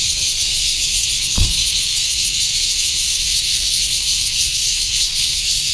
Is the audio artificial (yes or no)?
yes